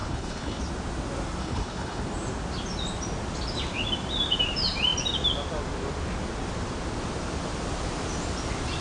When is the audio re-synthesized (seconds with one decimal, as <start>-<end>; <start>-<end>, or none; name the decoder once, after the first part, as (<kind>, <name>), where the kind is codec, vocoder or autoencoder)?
0.0-0.6 (codec, HILCodec); 1.4-2.0